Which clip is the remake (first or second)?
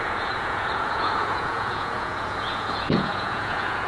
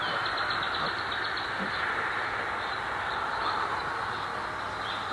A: first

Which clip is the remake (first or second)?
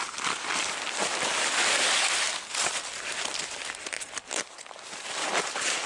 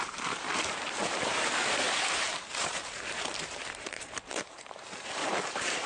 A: second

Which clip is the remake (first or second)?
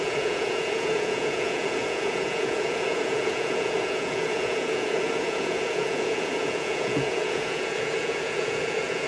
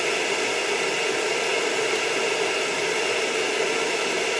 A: first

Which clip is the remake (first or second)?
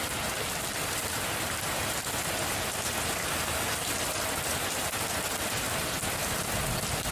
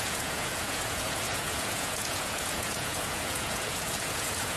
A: second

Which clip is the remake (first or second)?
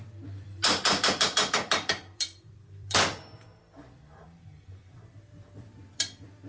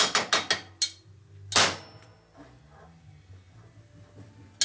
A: first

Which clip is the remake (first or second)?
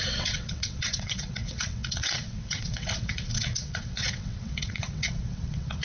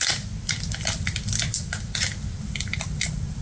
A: first